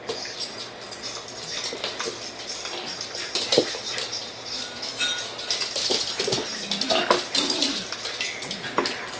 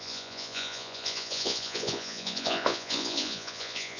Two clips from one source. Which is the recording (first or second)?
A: first